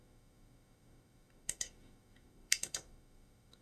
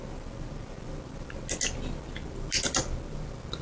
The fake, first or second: first